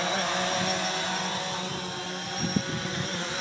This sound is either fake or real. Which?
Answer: real